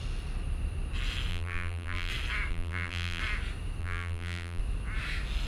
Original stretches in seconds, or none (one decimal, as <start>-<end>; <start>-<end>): 0.0-1.3; 2.1-2.5; 3.2-3.8; 4.6-5.5